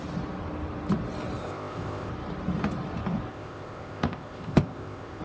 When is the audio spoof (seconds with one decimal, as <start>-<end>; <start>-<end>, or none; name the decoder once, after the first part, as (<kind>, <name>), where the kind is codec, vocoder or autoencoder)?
1.4-2.1 (codec, ZipCodec); 3.3-5.2